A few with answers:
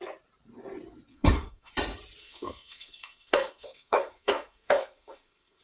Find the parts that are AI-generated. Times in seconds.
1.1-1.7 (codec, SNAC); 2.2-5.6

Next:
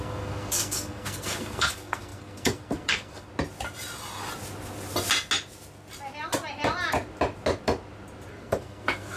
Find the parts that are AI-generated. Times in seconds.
0.0-3.3 (codec, SNAC); 8.3-9.2

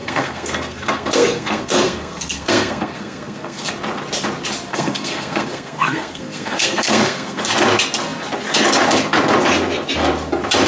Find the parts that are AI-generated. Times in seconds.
0.0-3.7 (codec, SNAC); 4.7-7.4

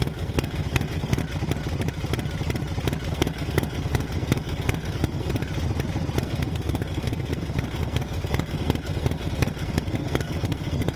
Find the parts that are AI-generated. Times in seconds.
0.0-1.2 (codec, SNAC); 3.1-5.3; 6.2-11.0

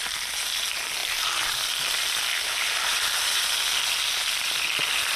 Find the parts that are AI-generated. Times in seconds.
none